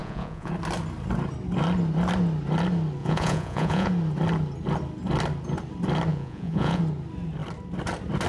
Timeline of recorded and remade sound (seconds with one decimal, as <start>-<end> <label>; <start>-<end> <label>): 0.0-0.5 remade; 0.5-3.0 recorded; 3.0-3.9 remade; 3.9-6.1 recorded; 6.1-6.8 remade; 6.8-8.3 recorded